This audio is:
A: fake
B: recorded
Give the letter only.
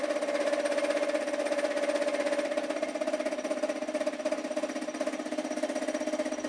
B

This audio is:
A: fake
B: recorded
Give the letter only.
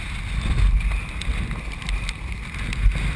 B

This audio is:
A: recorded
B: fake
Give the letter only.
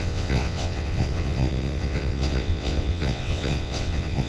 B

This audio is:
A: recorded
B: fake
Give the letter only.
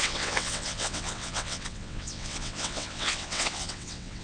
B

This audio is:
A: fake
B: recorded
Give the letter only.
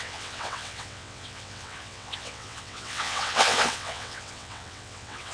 A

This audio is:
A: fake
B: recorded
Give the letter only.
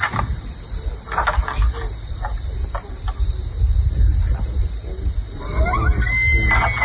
B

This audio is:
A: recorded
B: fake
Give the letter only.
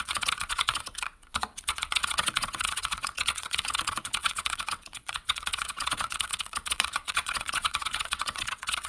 B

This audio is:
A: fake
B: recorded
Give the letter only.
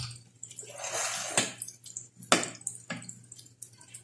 B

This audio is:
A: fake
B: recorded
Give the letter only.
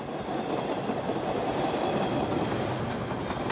B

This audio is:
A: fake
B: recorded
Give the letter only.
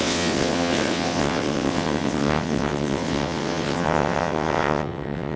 A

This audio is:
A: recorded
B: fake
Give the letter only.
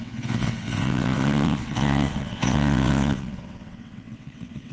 B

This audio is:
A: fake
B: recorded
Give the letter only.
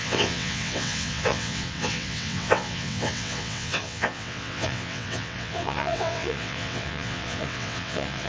A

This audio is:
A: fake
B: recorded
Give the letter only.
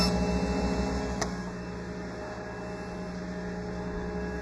B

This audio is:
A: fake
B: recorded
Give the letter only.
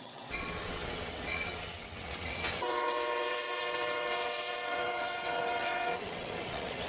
A